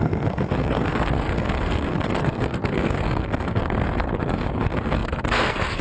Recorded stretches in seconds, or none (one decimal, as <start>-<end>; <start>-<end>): none